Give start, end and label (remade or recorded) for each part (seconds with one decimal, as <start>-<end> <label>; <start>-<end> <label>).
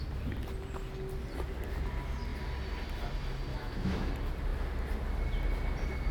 0.0-3.5 recorded; 3.5-4.1 remade; 4.1-6.1 recorded